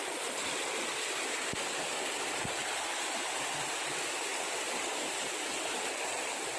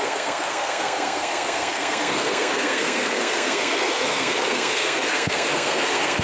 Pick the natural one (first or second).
first